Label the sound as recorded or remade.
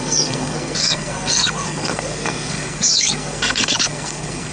remade